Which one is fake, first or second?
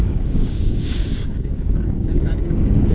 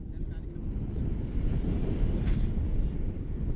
first